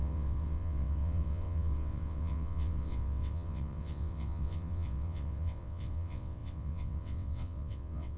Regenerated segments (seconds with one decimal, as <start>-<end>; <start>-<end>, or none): 0.0-8.2